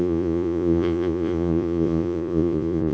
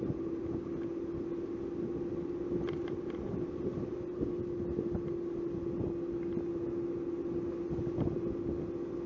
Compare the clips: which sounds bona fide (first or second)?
second